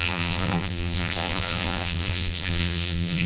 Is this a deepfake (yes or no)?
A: yes